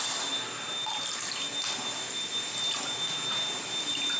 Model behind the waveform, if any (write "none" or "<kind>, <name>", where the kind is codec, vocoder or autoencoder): none